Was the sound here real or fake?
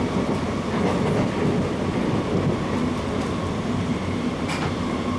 real